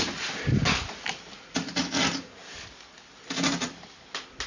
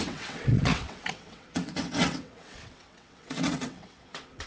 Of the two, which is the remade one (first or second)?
second